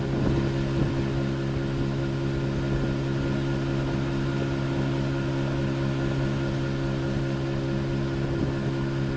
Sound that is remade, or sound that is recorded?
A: recorded